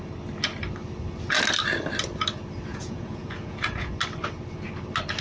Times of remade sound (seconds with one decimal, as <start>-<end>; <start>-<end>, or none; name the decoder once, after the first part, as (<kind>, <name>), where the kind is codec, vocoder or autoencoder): 2.7-3.9 (vocoder, Vocos)

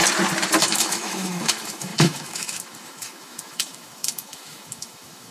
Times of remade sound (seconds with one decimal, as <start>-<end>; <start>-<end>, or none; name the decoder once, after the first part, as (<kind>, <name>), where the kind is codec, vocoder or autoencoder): 0.6-5.3 (autoencoder, DAC-VAE)

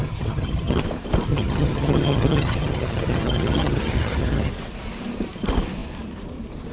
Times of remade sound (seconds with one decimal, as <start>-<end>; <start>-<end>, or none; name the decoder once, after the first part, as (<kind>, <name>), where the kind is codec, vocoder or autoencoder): 0.0-0.8 (vocoder, HiFi-GAN); 1.3-4.5

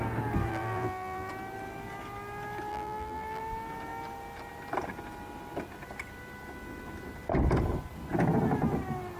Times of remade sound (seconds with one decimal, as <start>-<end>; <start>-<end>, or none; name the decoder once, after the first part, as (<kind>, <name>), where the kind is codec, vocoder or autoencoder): 0.5-1.3 (vocoder, BigVGAN v2); 2.7-3.4

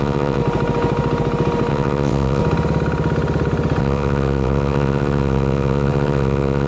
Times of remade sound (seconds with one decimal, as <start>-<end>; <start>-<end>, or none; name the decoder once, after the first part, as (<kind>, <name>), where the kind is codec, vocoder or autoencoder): 0.0-0.4 (vocoder, WaveNeXt); 1.7-2.4; 3.8-6.7

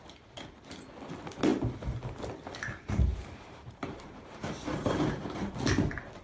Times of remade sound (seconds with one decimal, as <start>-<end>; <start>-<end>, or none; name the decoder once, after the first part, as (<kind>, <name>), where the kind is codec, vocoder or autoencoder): 3.1-5.5 (vocoder, BigVGAN v2)